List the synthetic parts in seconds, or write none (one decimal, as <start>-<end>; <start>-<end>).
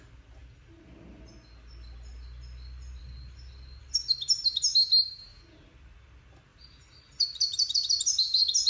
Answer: 6.5-8.0